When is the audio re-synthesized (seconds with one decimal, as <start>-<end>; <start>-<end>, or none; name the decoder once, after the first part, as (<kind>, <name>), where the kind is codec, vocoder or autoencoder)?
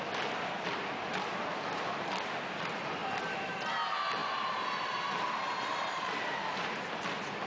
3.0-3.7 (vocoder, BigVGAN v2); 4.2-6.7